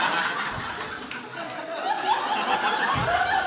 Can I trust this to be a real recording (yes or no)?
yes